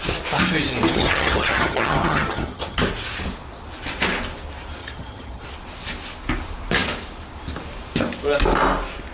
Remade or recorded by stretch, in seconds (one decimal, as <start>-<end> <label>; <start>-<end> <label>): 0.0-0.9 recorded; 0.9-2.8 remade; 2.8-4.8 recorded; 4.8-5.4 remade; 5.4-9.1 recorded